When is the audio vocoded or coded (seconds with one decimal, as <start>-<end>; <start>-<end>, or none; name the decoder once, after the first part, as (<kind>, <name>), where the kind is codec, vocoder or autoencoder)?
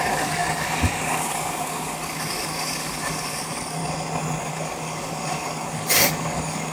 0.0-3.8 (codec, DAC); 4.4-6.7